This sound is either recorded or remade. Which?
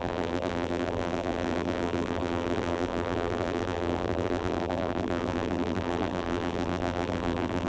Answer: remade